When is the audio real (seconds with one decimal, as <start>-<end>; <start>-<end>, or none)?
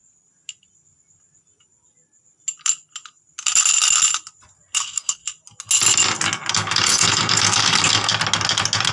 0.0-4.8; 5.2-6.5; 8.1-8.9